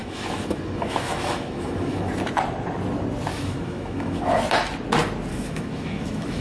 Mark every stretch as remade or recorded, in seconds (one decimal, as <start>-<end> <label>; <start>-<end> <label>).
0.0-2.1 remade; 2.1-3.3 recorded; 3.3-4.4 remade; 4.4-5.3 recorded; 5.3-6.4 remade

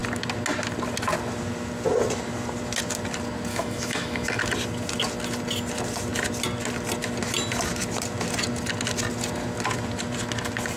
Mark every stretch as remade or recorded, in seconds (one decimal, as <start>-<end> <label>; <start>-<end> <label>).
0.0-3.5 recorded; 3.5-4.4 remade; 4.4-10.8 recorded

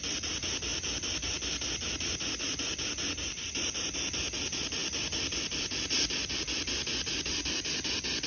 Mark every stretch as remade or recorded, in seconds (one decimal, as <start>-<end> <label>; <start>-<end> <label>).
0.0-4.8 recorded; 4.8-6.3 remade; 6.3-8.3 recorded